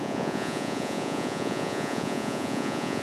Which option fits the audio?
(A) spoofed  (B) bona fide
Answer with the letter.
A